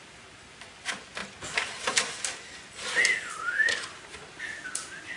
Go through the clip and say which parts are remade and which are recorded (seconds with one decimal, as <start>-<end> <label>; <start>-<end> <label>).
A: 0.0-5.2 recorded